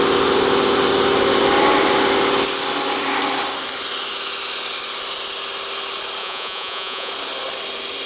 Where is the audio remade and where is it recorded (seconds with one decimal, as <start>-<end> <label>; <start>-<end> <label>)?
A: 0.0-6.2 recorded; 6.2-7.1 remade; 7.1-8.1 recorded

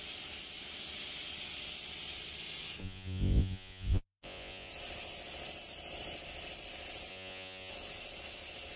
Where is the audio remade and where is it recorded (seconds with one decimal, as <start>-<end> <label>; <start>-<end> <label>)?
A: 0.0-2.8 recorded; 2.8-4.7 remade; 4.7-7.1 recorded; 7.1-7.7 remade; 7.7-8.8 recorded

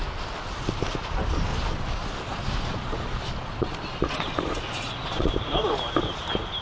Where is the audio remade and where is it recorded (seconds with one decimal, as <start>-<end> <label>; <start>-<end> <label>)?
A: 0.0-1.5 recorded; 1.5-5.3 remade; 5.3-6.6 recorded

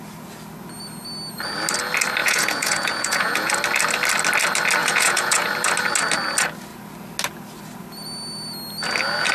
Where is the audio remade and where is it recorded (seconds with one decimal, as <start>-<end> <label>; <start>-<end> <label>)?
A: 0.0-2.2 recorded; 2.2-3.5 remade; 3.5-4.8 recorded; 4.8-5.5 remade; 5.5-9.3 recorded